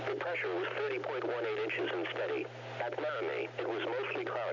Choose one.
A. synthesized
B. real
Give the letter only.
B